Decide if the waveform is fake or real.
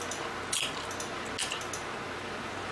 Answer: real